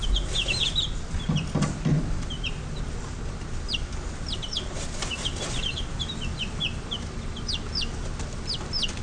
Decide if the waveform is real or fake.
real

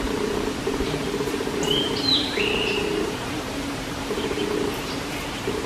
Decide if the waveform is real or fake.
fake